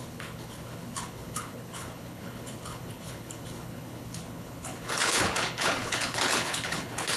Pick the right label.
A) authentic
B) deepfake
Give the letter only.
B